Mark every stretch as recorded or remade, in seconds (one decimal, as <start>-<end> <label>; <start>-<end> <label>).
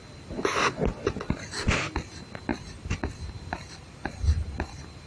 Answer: 0.0-5.1 recorded